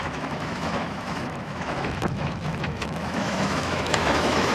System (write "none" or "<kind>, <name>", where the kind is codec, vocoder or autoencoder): autoencoder, DAC-VAE